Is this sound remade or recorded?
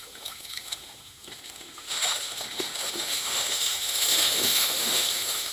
remade